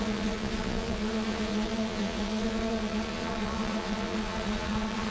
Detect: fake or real fake